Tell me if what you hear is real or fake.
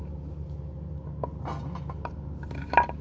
real